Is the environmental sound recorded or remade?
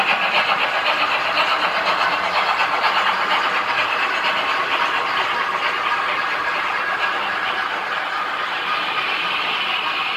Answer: recorded